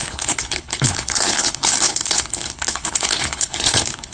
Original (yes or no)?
no